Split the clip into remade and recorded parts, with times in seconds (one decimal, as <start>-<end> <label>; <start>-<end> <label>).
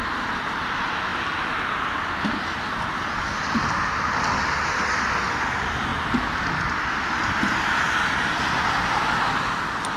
0.0-10.0 recorded